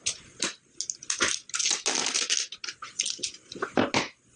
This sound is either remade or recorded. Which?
recorded